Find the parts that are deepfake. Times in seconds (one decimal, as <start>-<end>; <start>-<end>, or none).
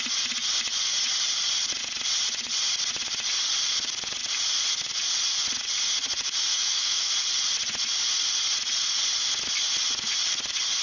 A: 6.5-7.1